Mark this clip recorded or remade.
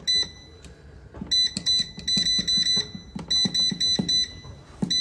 recorded